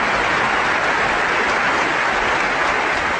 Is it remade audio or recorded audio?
recorded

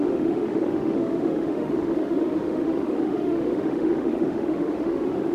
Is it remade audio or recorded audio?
remade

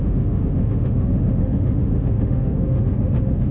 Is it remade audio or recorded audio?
remade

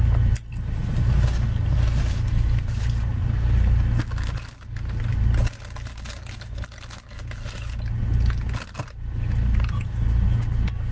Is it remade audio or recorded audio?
recorded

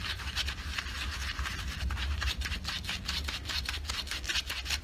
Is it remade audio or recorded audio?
recorded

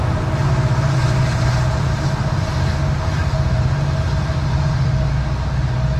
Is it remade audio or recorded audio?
recorded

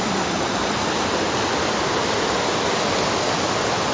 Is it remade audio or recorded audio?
recorded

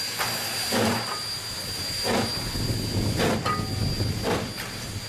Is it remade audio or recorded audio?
recorded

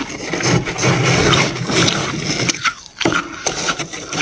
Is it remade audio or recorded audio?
recorded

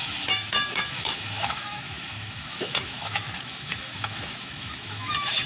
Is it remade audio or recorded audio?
remade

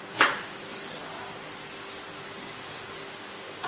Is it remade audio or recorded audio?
recorded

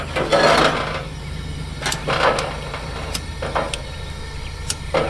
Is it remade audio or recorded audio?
recorded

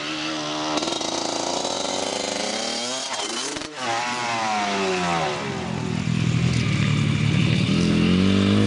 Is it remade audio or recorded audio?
recorded